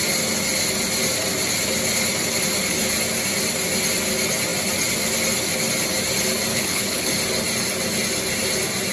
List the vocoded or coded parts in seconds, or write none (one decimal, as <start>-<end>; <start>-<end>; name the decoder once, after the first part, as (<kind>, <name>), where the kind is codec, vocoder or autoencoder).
6.5-7.1 (codec, HILCodec)

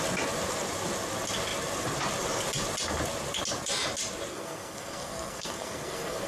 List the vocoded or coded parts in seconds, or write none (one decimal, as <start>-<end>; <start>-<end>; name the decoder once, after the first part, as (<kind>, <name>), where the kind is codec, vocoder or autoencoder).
4.3-6.3 (codec, SNAC)

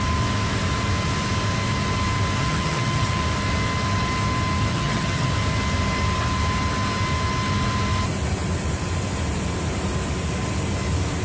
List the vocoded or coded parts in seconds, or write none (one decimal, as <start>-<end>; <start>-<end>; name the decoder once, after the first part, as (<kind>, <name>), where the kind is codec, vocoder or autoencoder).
2.4-3.2 (vocoder, HiFi-GAN); 4.7-5.3

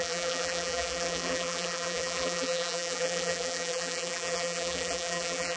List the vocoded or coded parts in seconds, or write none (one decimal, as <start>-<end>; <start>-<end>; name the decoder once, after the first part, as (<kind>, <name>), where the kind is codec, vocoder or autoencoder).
0.0-5.6 (vocoder, BigVGAN v2)

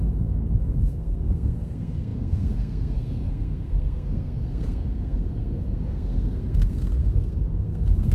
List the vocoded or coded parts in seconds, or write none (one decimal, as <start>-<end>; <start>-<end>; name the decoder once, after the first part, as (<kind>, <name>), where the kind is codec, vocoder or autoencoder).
0.0-8.1 (codec, SNAC)

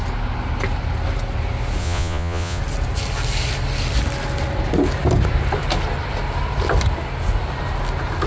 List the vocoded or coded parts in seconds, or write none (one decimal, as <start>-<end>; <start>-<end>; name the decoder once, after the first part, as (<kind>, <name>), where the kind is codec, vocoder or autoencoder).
1.8-2.6 (vocoder, Vocos)

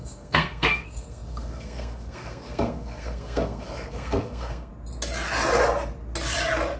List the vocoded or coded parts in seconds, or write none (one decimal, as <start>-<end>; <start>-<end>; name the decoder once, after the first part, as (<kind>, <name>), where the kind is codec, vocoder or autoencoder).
0.0-4.7 (codec, SNAC)